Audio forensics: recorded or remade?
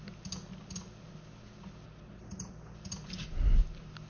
recorded